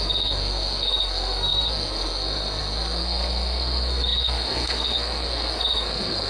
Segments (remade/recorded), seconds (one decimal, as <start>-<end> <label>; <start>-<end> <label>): 0.0-6.3 remade